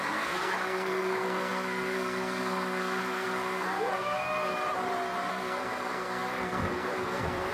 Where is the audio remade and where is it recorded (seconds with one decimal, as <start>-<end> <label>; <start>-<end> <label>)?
0.0-4.5 remade; 4.5-5.3 recorded; 5.3-7.5 remade